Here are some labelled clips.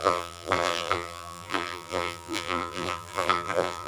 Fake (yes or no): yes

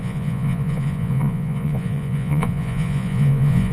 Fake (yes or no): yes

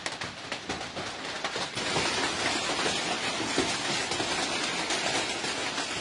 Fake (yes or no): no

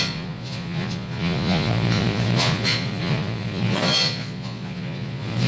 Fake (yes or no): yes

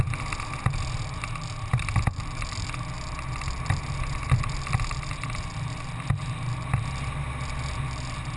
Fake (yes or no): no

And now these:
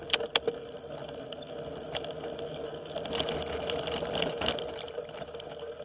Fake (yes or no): no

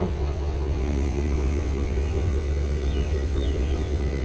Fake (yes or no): yes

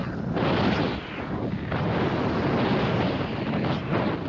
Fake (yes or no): no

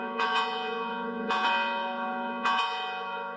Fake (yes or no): yes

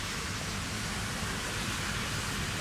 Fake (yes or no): no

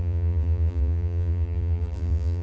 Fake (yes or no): yes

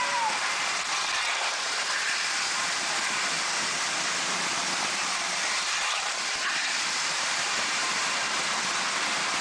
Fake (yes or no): yes